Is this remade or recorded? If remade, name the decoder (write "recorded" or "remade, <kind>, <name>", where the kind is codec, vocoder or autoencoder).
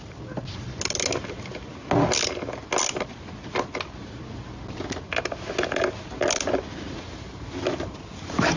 recorded